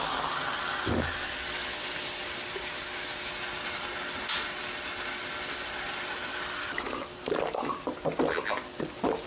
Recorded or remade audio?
recorded